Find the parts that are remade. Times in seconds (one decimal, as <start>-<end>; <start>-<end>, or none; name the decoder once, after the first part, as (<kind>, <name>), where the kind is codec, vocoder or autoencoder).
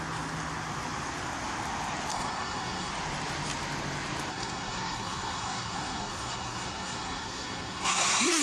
2.1-2.9 (codec, SNAC); 4.3-8.4